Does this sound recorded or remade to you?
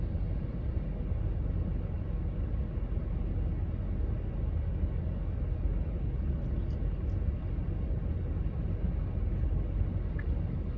recorded